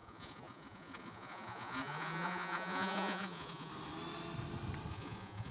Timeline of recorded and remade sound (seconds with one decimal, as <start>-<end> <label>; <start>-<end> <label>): 0.0-3.7 remade; 3.7-4.9 recorded; 4.9-5.5 remade